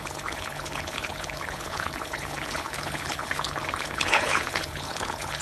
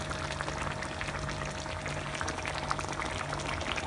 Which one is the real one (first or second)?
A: second